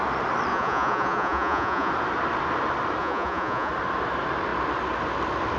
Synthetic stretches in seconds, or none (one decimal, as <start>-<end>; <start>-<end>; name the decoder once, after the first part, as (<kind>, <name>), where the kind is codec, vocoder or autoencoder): 0.5-1.9 (vocoder, Vocos); 3.0-3.7